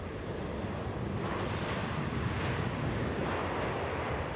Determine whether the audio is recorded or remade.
recorded